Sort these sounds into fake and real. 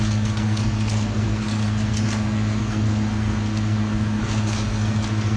fake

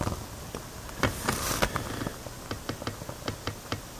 real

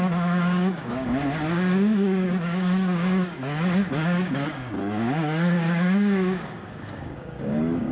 fake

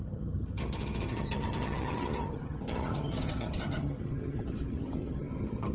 fake